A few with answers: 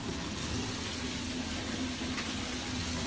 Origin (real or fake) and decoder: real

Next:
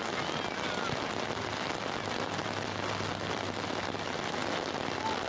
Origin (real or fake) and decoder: real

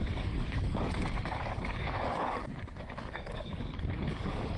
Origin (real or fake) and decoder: fake, codec, DAC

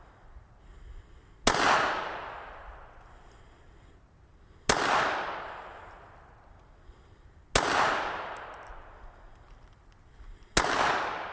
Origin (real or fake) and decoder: real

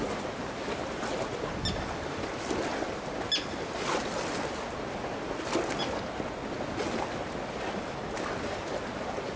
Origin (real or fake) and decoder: real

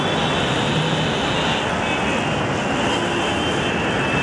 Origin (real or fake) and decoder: real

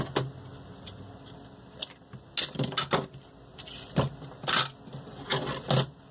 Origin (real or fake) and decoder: real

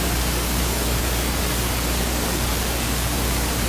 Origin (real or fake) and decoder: fake, codec, DAC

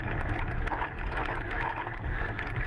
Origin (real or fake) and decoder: fake, codec, DAC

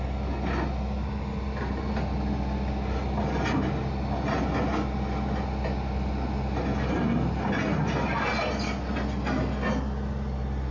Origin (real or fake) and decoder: real